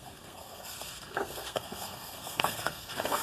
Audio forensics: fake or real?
fake